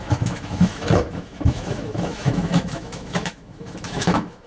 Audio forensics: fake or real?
fake